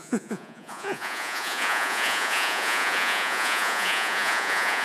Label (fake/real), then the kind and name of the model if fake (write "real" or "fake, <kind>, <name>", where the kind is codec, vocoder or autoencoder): fake, vocoder, Vocos